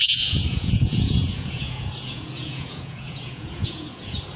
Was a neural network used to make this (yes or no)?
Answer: yes